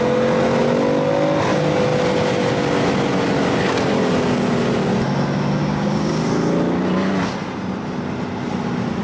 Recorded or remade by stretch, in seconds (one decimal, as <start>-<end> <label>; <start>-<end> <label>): 0.0-5.6 recorded; 5.6-6.2 remade; 6.2-9.0 recorded